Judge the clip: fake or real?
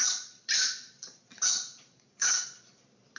fake